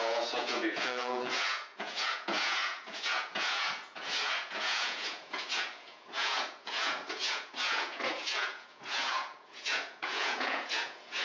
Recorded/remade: remade